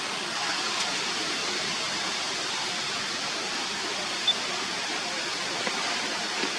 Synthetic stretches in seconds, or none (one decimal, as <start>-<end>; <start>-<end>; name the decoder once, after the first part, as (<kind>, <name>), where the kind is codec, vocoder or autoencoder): none